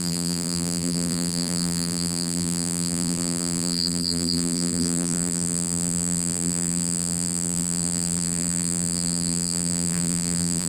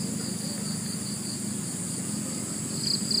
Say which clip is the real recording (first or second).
second